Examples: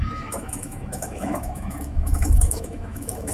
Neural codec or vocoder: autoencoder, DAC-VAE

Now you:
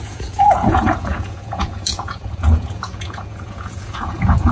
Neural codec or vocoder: vocoder, Vocos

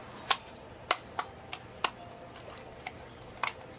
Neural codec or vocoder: none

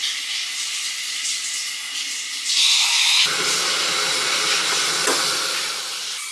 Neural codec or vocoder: none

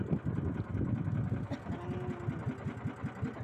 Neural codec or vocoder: none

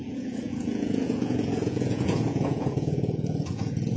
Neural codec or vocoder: vocoder, Vocos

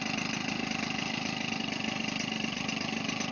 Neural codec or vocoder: none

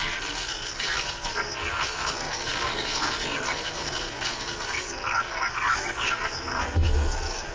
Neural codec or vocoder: codec, SNAC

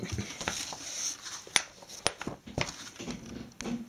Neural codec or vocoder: none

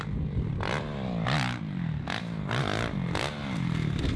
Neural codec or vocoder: none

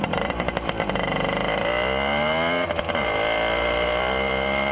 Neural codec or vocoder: none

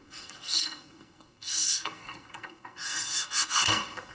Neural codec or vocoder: codec, SNAC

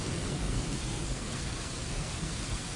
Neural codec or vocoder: codec, SNAC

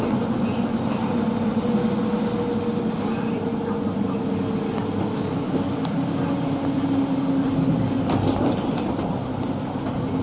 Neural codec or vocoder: none